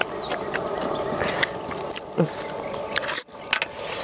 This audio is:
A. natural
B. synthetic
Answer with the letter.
A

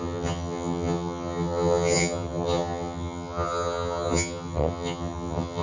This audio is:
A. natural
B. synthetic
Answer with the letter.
B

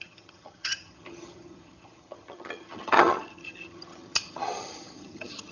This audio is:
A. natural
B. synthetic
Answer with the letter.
B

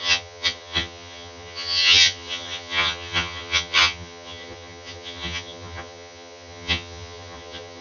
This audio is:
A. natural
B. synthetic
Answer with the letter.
B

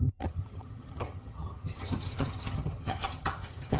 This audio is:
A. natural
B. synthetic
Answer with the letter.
B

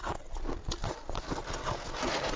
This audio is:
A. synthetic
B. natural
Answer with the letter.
B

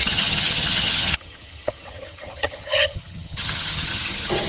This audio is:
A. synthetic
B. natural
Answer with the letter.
A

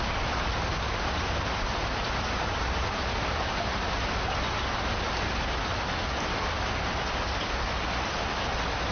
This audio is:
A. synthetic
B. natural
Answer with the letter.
B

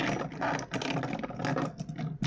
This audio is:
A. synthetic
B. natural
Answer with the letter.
B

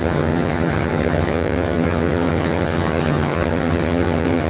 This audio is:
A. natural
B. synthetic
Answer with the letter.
B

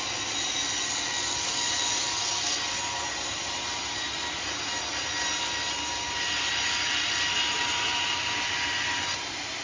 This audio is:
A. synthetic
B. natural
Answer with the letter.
B